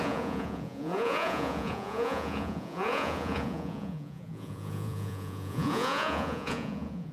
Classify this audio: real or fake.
fake